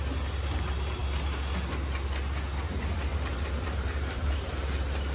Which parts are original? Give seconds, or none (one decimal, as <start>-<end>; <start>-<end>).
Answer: 0.0-3.1; 4.4-5.1